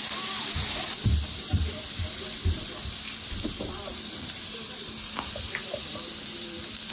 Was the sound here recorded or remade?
remade